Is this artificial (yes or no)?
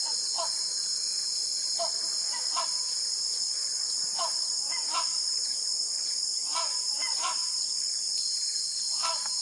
no